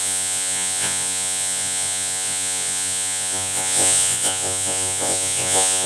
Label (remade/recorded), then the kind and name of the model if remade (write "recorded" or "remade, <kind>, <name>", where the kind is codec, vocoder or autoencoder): remade, vocoder, Vocos